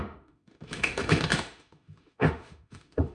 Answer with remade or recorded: remade